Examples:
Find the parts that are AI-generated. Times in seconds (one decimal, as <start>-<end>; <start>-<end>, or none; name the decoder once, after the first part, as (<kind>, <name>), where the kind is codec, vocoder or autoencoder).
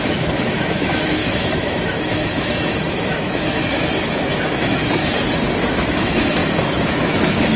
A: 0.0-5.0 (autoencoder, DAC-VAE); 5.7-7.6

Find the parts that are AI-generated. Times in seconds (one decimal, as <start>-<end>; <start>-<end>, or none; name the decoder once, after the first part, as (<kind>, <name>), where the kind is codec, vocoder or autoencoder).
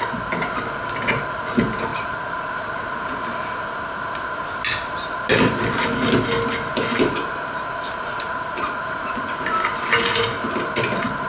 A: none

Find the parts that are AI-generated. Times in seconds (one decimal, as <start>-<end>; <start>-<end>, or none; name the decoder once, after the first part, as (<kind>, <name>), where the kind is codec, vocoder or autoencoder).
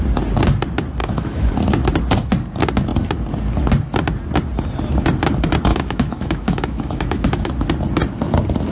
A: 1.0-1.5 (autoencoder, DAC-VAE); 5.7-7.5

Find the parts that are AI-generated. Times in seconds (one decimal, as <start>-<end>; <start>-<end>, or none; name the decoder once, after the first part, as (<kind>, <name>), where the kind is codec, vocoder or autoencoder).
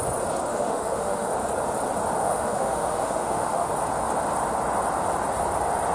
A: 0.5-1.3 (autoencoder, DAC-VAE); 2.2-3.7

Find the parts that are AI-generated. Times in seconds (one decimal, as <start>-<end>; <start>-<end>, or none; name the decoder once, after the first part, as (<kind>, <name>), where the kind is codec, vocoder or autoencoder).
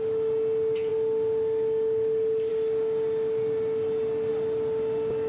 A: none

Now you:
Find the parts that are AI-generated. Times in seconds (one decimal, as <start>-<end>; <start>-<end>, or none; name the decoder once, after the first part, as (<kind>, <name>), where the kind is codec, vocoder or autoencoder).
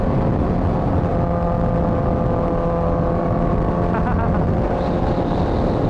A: none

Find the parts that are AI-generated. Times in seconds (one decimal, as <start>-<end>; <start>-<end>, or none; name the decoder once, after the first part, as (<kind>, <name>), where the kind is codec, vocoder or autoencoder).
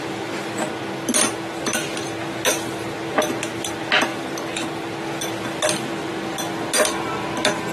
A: none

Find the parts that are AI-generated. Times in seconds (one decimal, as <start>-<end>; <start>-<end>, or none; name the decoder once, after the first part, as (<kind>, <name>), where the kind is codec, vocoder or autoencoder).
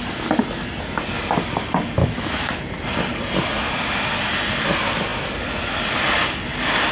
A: 2.0-2.5 (autoencoder, DAC-VAE)